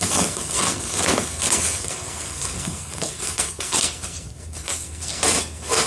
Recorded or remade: remade